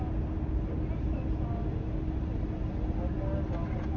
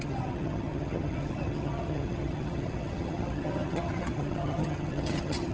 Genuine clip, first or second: first